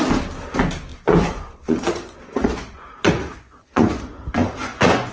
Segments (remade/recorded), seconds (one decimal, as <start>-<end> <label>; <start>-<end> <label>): 0.0-0.9 recorded; 0.9-4.0 remade; 4.0-4.4 recorded; 4.4-5.1 remade